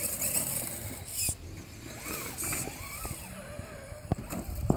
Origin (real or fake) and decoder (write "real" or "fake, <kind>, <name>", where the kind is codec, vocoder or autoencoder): fake, vocoder, BigVGAN v2